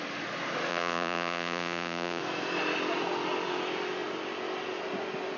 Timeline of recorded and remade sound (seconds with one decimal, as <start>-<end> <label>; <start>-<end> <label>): 0.0-0.7 recorded; 0.7-2.2 remade; 2.2-5.4 recorded